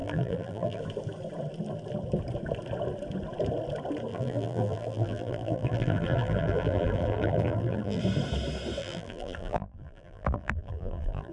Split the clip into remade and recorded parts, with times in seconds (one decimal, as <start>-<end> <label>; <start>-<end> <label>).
0.0-0.8 remade; 0.8-4.1 recorded; 4.1-8.0 remade; 8.0-8.8 recorded; 8.8-11.3 remade